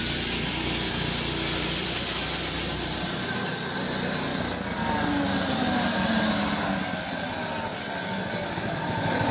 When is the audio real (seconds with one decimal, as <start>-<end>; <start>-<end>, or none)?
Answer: 0.0-9.3